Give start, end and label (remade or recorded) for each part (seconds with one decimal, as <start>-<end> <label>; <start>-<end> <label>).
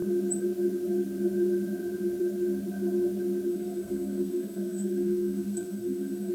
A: 0.0-3.5 recorded; 3.5-6.3 remade